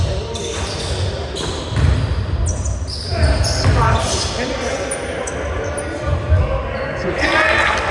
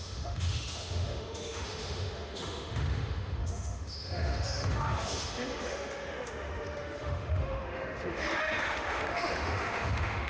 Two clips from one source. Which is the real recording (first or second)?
first